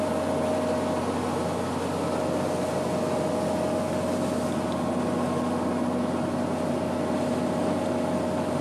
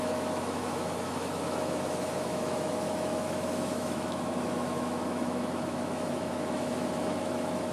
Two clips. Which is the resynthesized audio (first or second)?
second